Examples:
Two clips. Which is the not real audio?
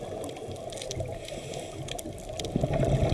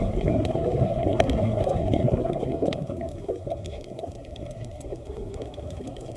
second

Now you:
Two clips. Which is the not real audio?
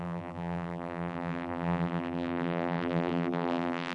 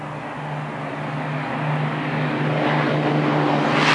first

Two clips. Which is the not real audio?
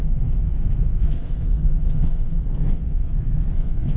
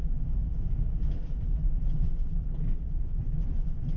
first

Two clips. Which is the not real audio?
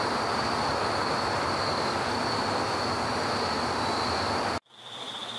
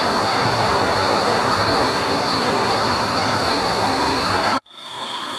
second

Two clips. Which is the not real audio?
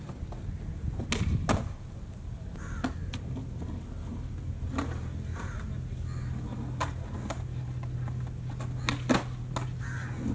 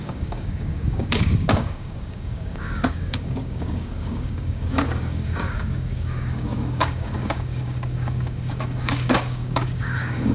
second